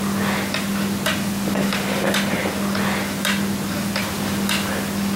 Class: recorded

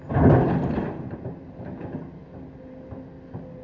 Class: recorded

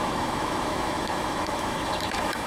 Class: remade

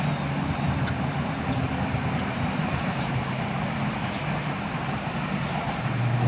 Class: recorded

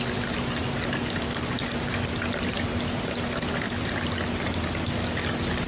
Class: recorded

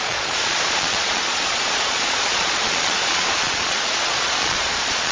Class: remade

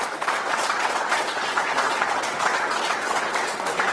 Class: remade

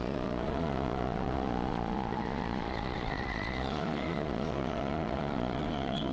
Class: remade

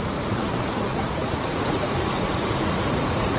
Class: remade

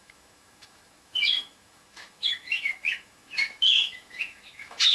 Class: remade